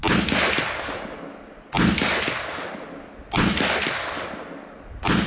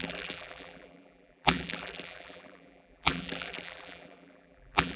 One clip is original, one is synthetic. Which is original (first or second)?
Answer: first